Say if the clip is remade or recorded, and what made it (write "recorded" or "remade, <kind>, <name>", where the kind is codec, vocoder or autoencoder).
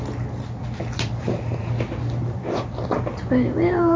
recorded